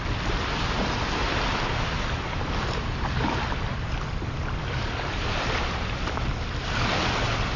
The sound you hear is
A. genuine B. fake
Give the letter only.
A